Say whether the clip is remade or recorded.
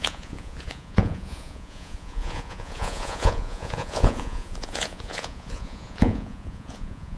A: remade